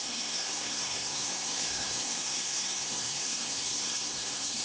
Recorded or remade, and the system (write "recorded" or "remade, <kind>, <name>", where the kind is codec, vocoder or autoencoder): remade, codec, SNAC